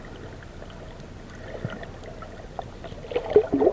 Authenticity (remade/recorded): recorded